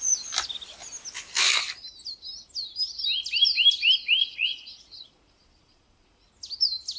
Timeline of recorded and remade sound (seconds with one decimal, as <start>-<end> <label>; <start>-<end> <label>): 0.0-4.2 recorded; 4.2-6.3 remade; 6.3-7.0 recorded